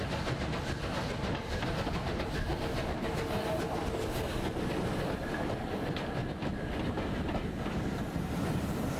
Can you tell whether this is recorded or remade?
recorded